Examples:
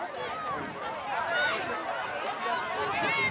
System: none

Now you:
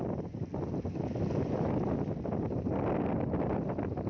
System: none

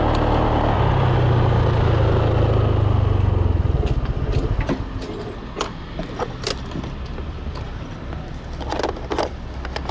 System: none